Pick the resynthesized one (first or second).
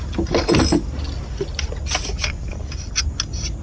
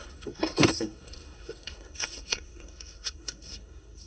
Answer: second